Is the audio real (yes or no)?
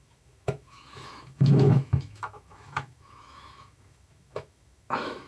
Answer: no